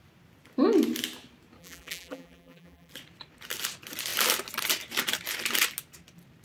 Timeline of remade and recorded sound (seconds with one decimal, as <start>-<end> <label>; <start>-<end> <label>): 0.0-1.6 recorded; 1.6-2.9 remade; 2.9-6.4 recorded